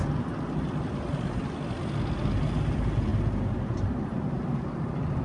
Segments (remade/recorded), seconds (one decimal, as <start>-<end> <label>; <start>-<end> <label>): 0.0-5.2 recorded